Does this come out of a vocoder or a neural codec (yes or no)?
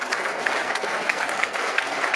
yes